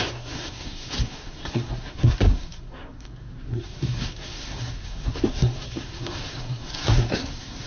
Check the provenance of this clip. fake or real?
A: fake